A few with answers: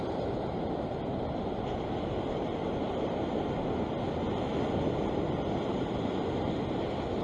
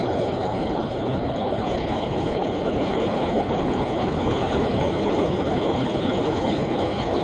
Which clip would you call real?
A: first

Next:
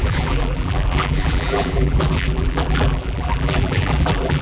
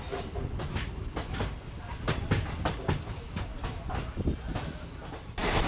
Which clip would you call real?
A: second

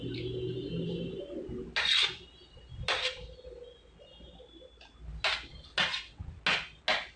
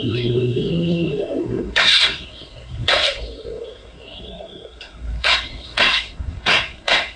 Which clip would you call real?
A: first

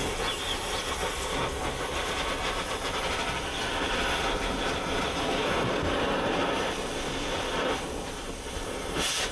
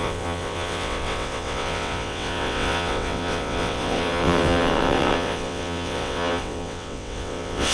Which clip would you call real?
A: first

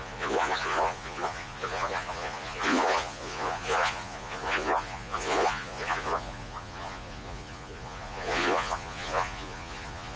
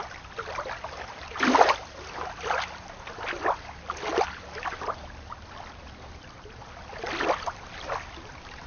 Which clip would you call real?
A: second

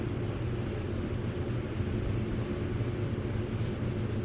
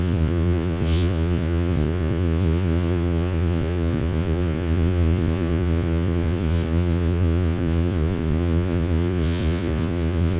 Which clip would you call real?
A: first